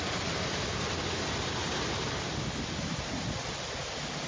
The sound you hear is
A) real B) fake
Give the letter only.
A